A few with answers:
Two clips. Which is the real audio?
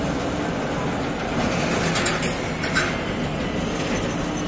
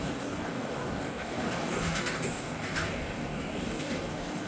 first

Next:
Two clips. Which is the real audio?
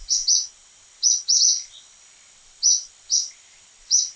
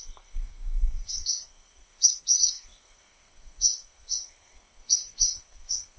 first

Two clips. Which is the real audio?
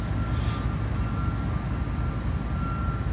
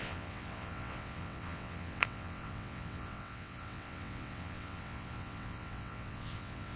first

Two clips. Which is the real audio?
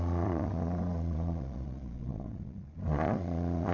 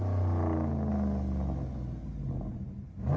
second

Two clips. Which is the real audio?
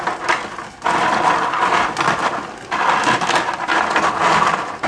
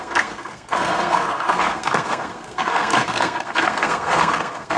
first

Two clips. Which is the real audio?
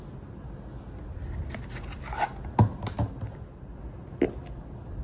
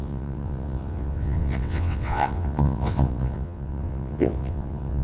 first